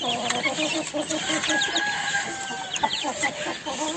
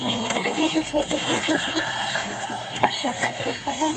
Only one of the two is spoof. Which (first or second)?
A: second